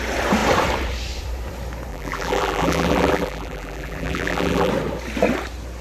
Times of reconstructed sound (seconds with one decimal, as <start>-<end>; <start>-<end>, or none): 1.9-4.7